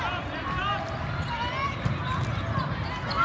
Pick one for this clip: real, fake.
real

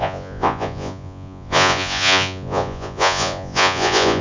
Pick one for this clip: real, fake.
fake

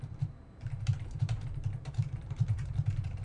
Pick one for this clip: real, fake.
fake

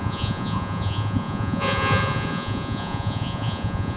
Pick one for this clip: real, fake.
fake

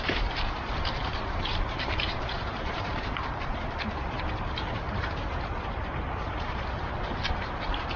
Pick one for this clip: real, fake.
fake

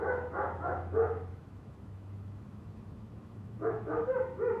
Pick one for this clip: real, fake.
fake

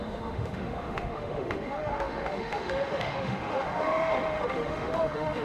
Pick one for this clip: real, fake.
fake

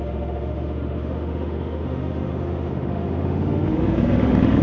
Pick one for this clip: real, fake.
fake